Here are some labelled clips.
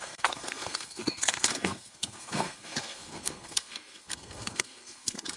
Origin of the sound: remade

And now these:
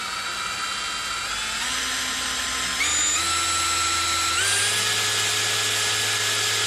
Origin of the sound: recorded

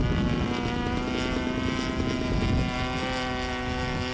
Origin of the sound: recorded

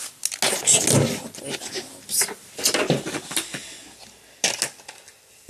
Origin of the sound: recorded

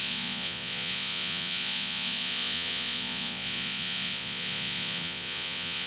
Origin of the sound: remade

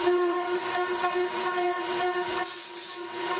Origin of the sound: remade